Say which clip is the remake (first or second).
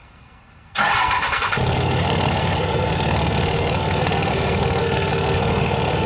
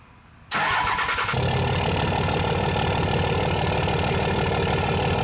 first